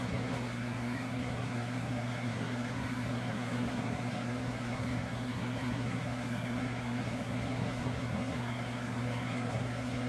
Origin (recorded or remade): remade